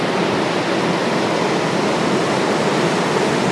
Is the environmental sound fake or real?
real